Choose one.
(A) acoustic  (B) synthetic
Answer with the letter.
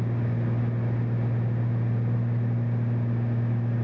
A